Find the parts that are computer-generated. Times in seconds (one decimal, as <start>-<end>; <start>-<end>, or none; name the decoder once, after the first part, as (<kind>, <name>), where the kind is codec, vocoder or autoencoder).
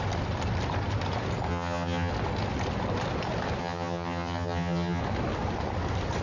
1.5-2.1 (vocoder, HiFi-GAN); 3.6-5.0